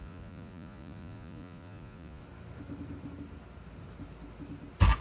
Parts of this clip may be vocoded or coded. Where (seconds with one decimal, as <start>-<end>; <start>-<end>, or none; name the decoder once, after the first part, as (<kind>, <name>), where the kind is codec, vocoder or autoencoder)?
0.0-2.2 (vocoder, Vocos)